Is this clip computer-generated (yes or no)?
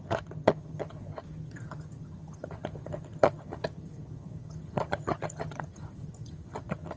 yes